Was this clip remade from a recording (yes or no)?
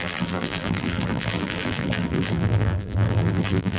yes